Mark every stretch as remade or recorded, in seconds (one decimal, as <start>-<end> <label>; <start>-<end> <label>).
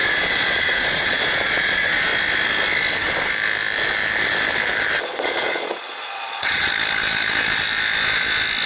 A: 0.0-2.1 remade; 2.1-5.0 recorded; 5.0-6.7 remade; 6.7-8.7 recorded